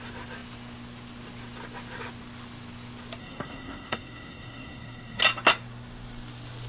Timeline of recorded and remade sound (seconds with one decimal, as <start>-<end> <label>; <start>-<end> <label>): 0.0-3.2 recorded; 3.2-5.2 remade; 5.2-6.7 recorded